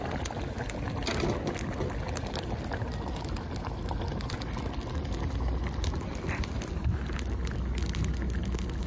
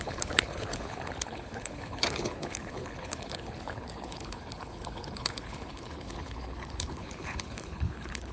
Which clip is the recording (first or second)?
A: first